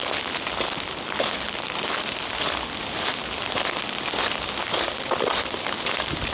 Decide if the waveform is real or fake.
real